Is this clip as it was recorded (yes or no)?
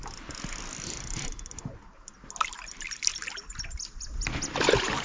yes